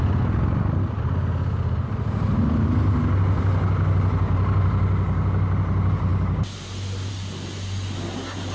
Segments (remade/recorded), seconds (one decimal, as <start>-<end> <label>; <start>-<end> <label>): 0.0-8.5 recorded